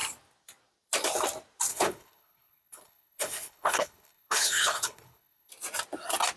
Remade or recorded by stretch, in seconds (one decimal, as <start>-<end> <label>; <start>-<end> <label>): 0.0-1.7 recorded; 1.7-5.5 remade; 5.5-6.4 recorded